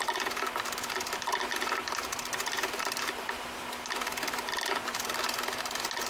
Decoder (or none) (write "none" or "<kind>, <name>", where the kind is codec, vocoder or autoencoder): none